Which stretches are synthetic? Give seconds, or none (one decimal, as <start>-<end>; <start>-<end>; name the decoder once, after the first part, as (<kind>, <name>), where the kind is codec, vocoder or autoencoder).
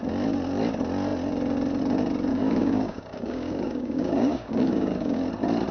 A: 2.3-5.3 (codec, DAC)